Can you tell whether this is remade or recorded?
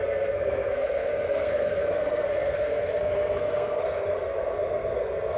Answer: remade